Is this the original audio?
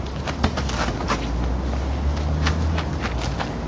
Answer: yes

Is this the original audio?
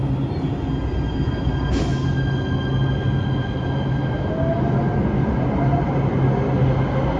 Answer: yes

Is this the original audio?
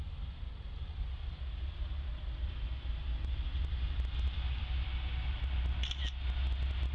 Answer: yes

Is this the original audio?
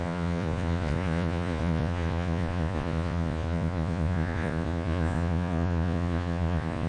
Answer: no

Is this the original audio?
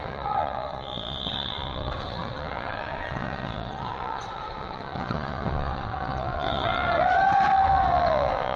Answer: no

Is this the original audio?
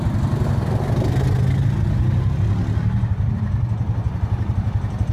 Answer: yes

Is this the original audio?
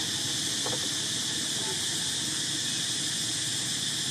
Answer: yes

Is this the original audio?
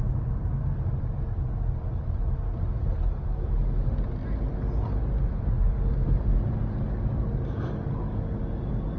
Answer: yes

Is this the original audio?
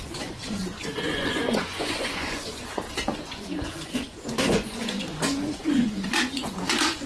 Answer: no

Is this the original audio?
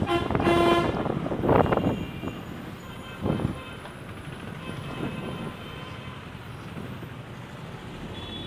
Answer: yes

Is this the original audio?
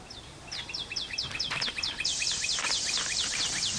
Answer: yes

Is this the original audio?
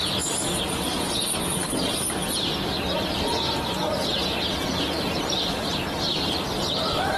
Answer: yes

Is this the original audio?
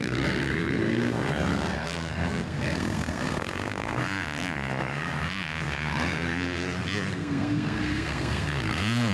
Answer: no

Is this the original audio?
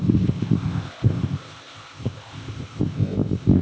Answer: no